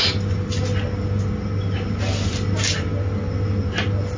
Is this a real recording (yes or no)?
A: yes